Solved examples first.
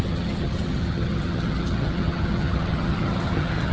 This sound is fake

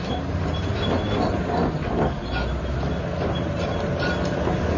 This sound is real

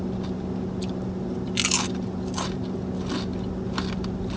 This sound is real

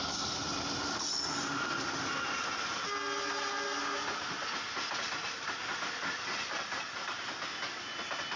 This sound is real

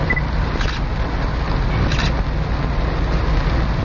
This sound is real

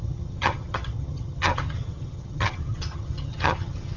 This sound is fake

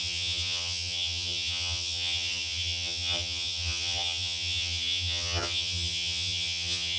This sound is fake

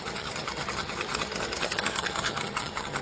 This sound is fake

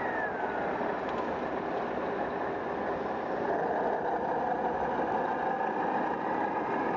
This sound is real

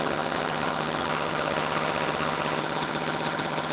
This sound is fake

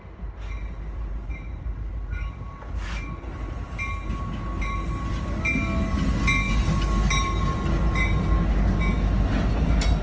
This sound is real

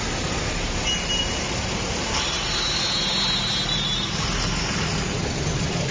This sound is real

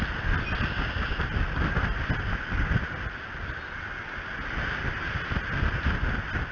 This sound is real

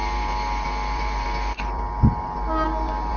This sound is real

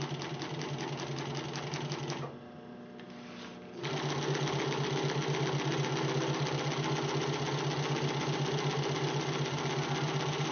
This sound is real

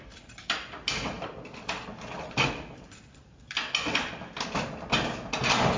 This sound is real